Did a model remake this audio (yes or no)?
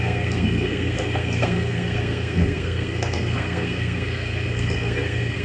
yes